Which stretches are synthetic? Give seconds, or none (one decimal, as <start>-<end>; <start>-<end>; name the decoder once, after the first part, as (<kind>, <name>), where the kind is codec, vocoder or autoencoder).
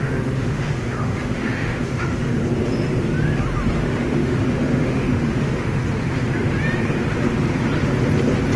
0.0-2.4 (autoencoder, DAC-VAE); 3.7-5.8